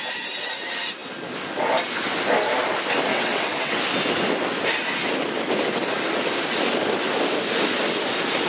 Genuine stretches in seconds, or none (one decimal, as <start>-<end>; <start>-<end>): 0.0-3.1; 3.8-8.5